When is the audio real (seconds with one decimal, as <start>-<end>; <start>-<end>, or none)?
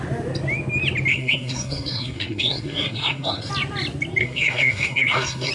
0.0-1.1; 3.5-4.2